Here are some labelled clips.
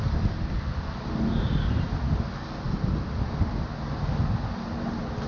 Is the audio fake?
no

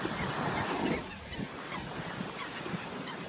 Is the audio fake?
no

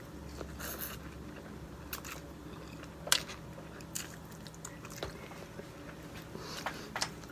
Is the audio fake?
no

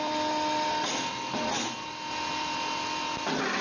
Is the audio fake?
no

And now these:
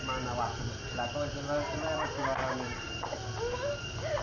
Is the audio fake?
no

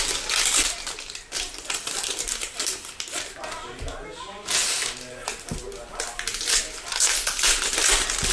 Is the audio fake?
no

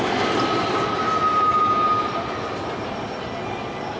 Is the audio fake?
no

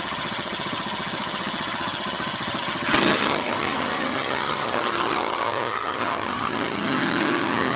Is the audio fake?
yes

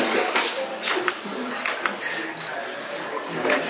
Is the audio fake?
no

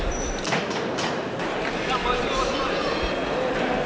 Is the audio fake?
yes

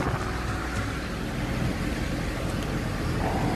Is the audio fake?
no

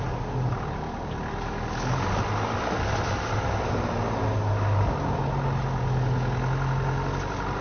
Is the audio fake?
no